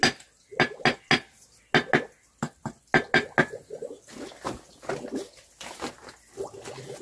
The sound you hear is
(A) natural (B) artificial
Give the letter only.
A